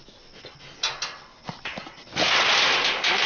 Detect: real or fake real